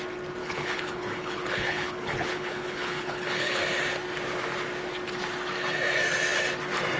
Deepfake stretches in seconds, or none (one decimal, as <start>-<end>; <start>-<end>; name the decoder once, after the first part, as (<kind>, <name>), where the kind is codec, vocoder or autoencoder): 0.4-3.6 (codec, HILCodec)